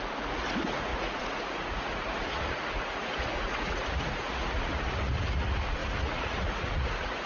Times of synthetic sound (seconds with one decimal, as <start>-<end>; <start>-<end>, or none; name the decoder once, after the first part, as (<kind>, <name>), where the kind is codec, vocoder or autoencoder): 0.0-7.3 (vocoder, Vocos)